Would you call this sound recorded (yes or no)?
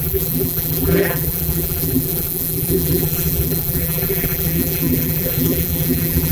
no